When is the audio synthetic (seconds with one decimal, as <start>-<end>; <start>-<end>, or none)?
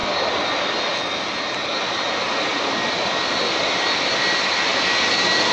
2.5-3.9